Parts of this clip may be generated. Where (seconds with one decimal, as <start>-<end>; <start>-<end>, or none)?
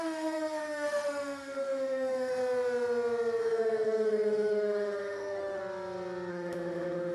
0.0-2.4; 3.4-5.6; 6.3-7.1